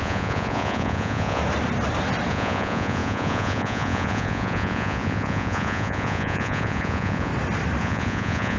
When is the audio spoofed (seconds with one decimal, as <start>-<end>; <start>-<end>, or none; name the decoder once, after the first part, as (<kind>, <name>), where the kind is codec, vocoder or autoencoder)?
0.0-1.4 (vocoder, Vocos); 2.3-7.3; 7.8-8.6